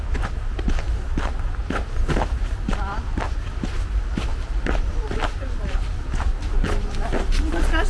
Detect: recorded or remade recorded